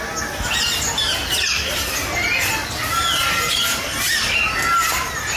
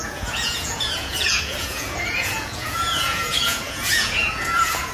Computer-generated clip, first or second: second